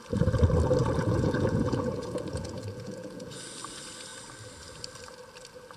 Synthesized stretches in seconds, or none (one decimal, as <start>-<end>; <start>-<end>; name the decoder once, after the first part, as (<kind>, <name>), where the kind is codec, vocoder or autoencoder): 0.8-3.4 (vocoder, Vocos)